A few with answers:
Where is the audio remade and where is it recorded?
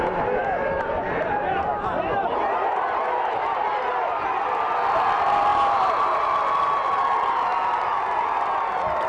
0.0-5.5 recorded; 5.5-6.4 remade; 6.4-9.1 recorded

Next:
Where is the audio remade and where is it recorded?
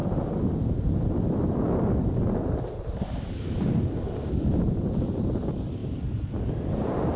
0.0-4.3 recorded; 4.3-7.2 remade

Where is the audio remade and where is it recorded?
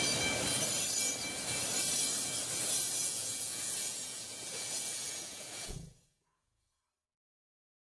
0.0-3.0 recorded; 3.0-6.8 remade; 6.8-7.9 recorded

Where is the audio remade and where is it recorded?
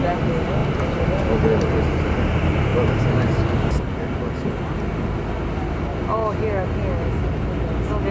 0.0-8.1 recorded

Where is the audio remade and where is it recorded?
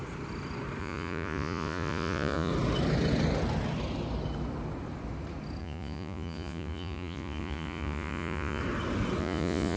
0.0-0.8 recorded; 0.8-2.5 remade; 2.5-5.6 recorded; 5.6-8.6 remade; 8.6-9.2 recorded; 9.2-9.8 remade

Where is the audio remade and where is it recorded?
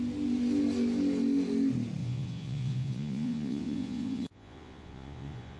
0.0-2.0 recorded; 2.0-5.6 remade